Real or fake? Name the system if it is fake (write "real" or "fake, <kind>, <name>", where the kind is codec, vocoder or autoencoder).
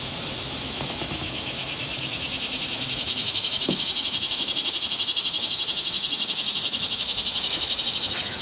fake, autoencoder, DAC-VAE